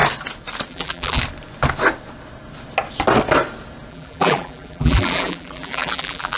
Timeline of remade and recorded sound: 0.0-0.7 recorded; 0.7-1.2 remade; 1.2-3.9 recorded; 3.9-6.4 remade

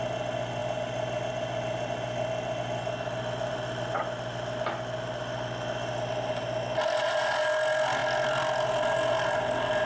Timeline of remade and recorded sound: 0.0-9.9 recorded